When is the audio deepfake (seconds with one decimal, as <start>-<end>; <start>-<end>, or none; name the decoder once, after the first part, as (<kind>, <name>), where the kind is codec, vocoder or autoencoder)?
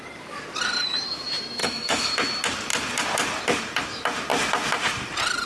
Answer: 1.6-2.1 (autoencoder, DAC-VAE)